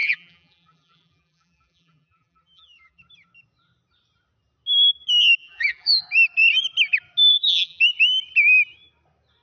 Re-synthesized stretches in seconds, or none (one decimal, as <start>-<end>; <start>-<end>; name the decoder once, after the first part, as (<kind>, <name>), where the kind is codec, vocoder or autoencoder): 0.0-3.0 (vocoder, BigVGAN v2); 5.4-6.0; 7.3-7.8